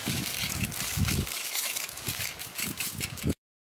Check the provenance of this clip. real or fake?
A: fake